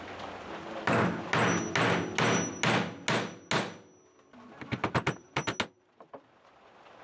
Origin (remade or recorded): recorded